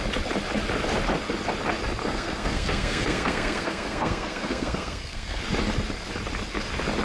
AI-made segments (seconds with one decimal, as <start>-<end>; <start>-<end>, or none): 2.0-5.4